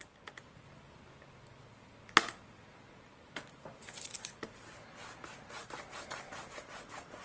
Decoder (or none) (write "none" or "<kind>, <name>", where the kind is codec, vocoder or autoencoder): none